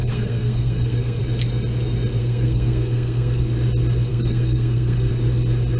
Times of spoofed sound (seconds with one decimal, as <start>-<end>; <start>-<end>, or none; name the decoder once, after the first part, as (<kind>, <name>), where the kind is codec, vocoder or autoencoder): 0.0-1.2 (codec, SNAC); 2.2-3.4; 4.1-5.1